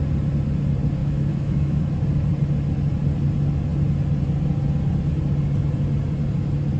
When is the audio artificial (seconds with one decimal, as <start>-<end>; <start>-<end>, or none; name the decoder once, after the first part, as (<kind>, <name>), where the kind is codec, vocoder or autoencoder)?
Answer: 1.0-1.8 (autoencoder, DAC-VAE)